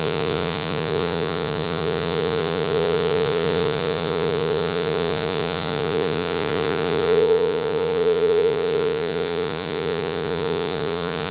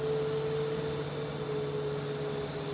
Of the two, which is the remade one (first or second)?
first